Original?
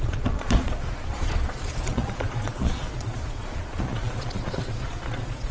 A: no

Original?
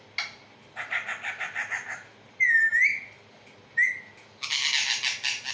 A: yes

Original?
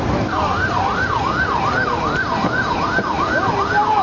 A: yes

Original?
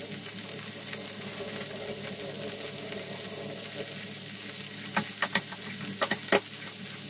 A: yes